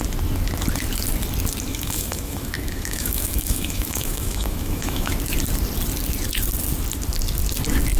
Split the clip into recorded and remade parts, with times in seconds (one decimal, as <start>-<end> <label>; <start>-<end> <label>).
0.0-1.7 recorded; 1.7-5.1 remade; 5.1-8.0 recorded